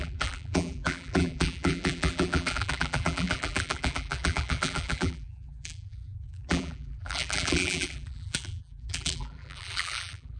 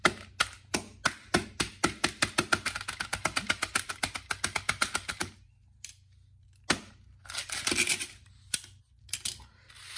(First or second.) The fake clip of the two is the first